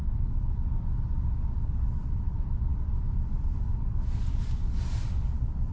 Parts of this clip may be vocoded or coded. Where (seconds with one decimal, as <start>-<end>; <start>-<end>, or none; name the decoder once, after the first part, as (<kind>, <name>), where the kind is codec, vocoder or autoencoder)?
none